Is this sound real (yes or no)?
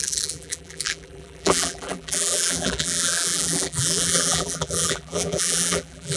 no